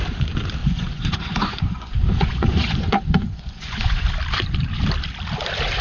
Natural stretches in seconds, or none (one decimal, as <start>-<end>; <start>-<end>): 0.0-0.6; 4.1-5.8

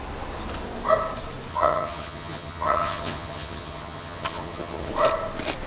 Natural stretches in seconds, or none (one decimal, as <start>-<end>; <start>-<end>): 0.0-1.5; 4.9-5.7

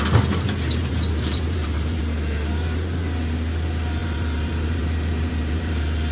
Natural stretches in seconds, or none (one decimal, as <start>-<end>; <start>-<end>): 0.0-0.8; 2.0-4.0

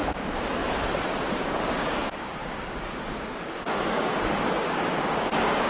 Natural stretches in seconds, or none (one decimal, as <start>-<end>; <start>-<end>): 0.6-1.4

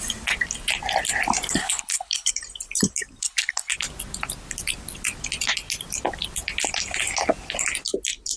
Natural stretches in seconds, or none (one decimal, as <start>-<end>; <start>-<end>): 0.0-1.6; 2.3-3.2; 3.7-8.4